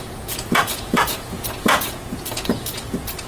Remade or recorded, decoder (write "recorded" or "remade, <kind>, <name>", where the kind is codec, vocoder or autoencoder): remade, vocoder, Vocos